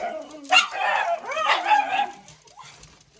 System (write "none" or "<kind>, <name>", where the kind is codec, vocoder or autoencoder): none